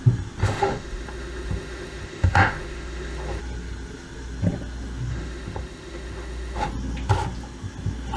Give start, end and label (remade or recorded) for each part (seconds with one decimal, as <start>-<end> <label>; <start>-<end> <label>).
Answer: 0.0-0.4 recorded; 0.4-3.4 remade; 3.4-5.1 recorded; 5.1-6.7 remade; 6.7-8.2 recorded